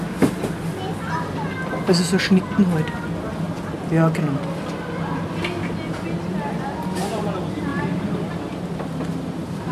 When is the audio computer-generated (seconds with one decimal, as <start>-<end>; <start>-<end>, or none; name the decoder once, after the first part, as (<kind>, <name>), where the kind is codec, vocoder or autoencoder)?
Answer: 7.7-9.7 (vocoder, BigVGAN v2)